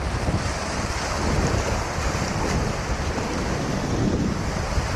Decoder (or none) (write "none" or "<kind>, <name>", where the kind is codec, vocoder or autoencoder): none